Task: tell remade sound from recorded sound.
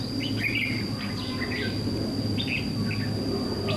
recorded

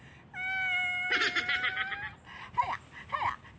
recorded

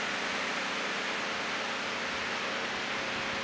recorded